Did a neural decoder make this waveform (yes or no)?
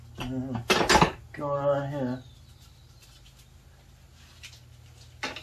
no